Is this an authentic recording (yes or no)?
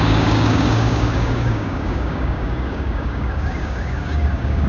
no